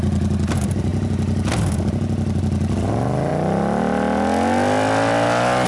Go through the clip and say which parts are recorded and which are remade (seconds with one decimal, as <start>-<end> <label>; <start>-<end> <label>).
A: 0.0-5.7 recorded